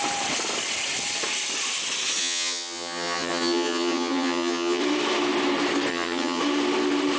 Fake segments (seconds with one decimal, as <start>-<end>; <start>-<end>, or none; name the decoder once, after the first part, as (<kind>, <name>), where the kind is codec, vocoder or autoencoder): 2.2-4.8 (vocoder, HiFi-GAN); 5.9-6.4